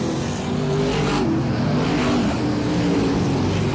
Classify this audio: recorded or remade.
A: recorded